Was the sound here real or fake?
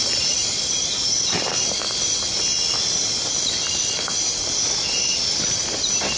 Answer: real